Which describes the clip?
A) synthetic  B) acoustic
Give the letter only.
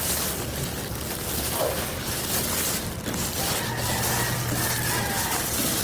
B